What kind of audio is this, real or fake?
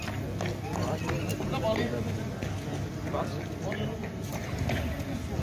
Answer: real